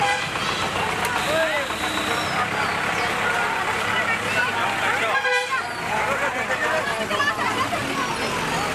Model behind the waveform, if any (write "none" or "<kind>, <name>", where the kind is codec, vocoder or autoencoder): none